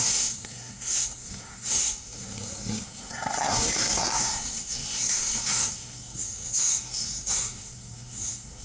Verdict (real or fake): fake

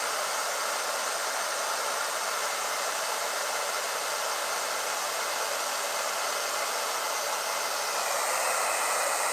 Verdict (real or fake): real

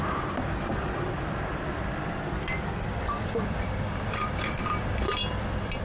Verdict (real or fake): fake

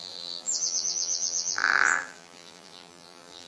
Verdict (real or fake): fake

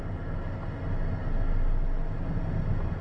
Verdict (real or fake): real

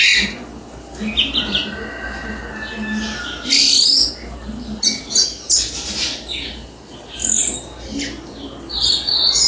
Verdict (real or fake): real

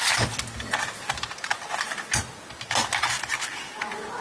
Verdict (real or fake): real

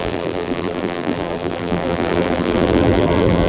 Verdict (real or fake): fake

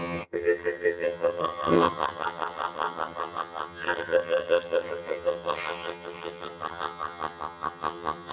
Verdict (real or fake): fake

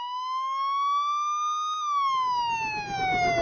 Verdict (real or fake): real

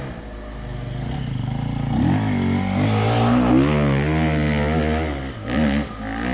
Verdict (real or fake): real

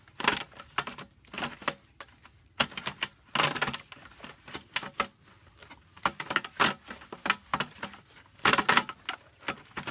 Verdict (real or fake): real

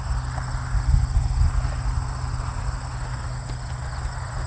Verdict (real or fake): real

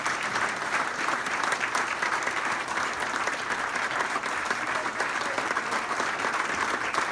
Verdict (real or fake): fake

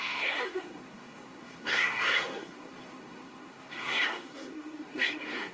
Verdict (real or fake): fake